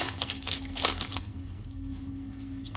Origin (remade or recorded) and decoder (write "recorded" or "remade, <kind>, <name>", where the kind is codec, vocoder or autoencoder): remade, codec, SNAC